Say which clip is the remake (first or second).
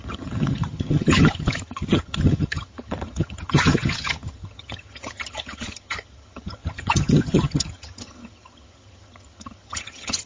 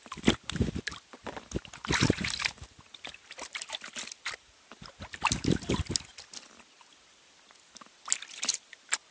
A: first